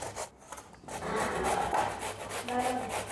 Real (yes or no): yes